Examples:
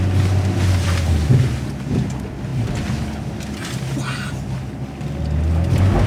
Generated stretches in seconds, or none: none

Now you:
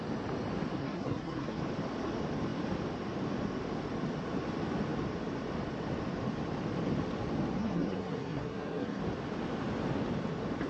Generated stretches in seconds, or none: 0.8-1.6 (codec, SNAC); 7.6-9.0

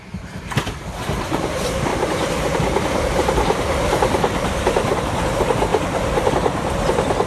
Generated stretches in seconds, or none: 1.9-5.0 (vocoder, BigVGAN v2); 5.7-6.3

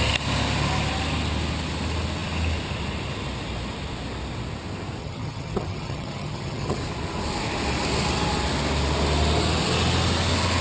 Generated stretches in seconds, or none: 5.0-6.8 (vocoder, HiFi-GAN)

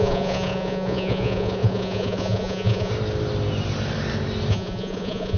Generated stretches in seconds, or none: 0.0-2.9 (vocoder, Vocos); 4.5-5.4

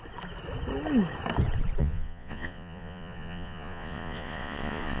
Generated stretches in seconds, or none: 1.8-5.0 (vocoder, Vocos)

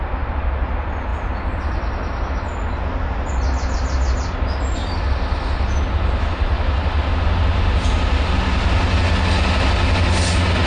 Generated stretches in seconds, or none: none

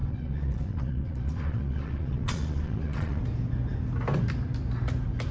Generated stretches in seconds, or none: 0.0-3.2 (vocoder, Vocos)